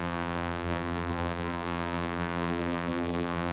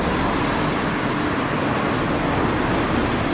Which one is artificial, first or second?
first